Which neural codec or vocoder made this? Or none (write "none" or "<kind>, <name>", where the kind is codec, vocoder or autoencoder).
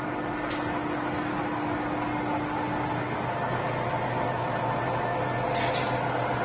none